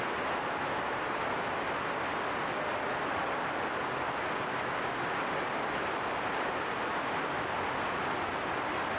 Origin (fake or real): real